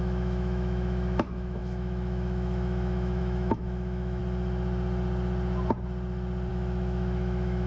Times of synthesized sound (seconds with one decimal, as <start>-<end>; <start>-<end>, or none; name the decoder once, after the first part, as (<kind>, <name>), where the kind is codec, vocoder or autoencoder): 0.0-4.2 (autoencoder, DAC-VAE); 6.5-7.7